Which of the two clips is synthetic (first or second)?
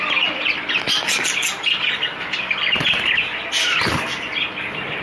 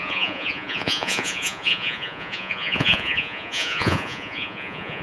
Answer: second